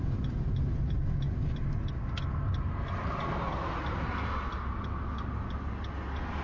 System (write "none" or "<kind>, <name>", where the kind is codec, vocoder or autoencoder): none